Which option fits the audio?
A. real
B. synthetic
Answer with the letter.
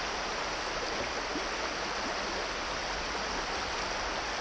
A